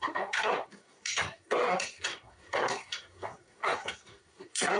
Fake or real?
fake